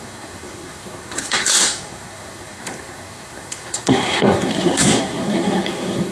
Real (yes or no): no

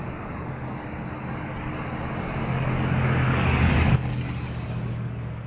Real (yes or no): no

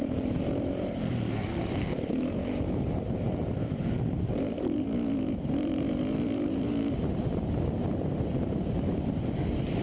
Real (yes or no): no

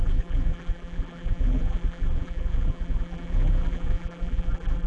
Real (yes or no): no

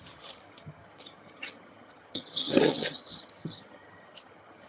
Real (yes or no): no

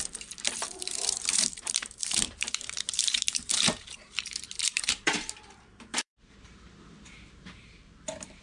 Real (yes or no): no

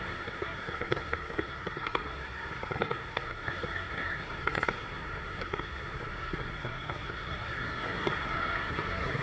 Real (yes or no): no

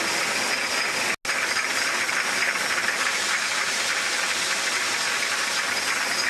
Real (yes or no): yes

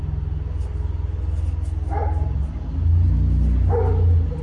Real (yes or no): yes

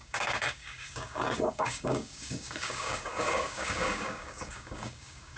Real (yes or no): no